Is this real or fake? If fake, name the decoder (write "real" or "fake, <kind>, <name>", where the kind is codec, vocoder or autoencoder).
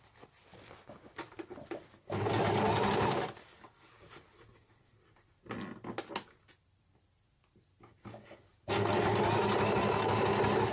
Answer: real